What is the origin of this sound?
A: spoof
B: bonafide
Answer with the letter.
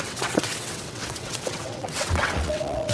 A